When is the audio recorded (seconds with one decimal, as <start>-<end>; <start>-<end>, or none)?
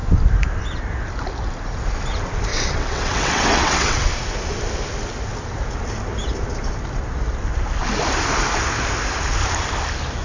0.0-2.5; 4.1-10.2